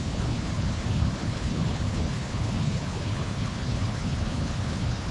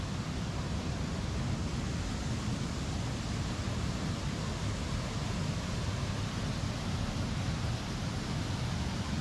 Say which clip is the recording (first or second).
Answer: second